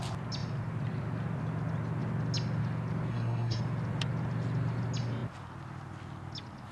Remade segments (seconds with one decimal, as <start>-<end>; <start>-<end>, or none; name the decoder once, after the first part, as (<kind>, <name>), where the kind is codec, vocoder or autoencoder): 3.1-3.6 (codec, SNAC)

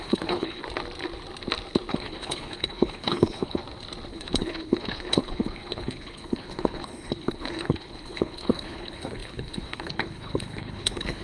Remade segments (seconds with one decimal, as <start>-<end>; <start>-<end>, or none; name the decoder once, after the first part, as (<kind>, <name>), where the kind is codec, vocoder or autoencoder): 0.0-0.6 (codec, HILCodec); 1.9-3.6; 4.1-11.2